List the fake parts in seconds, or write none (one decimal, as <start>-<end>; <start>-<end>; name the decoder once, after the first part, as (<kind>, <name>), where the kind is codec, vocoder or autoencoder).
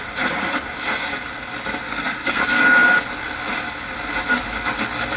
1.9-2.4 (codec, SNAC)